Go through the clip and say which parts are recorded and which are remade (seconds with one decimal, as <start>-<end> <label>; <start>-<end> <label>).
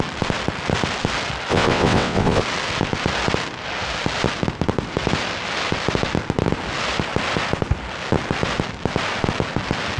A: 0.0-1.5 recorded; 1.5-2.4 remade; 2.4-10.0 recorded